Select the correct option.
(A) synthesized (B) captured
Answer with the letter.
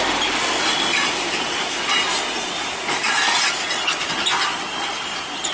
B